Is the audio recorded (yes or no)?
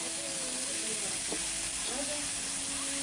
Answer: yes